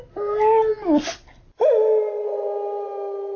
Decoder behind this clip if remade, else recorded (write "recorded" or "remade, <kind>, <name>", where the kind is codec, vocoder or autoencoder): recorded